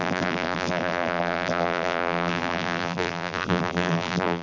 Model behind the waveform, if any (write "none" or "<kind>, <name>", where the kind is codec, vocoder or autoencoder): vocoder, BigVGAN v2